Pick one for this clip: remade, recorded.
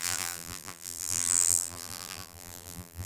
remade